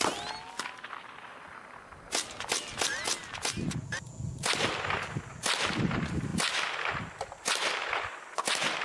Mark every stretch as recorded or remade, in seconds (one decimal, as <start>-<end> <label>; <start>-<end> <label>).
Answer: 0.0-8.8 recorded